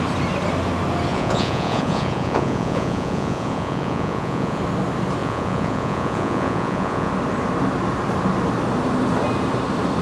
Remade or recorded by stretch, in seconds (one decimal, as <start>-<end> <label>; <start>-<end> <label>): 0.0-1.1 recorded; 1.1-4.6 remade; 4.6-5.2 recorded; 5.2-7.1 remade; 7.1-10.0 recorded